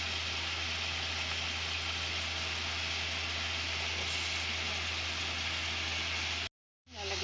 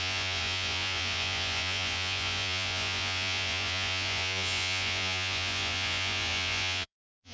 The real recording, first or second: first